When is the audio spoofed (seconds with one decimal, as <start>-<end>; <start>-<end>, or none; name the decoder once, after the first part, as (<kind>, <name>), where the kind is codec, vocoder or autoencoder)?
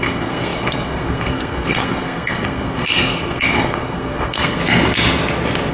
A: 0.0-4.6 (codec, SNAC)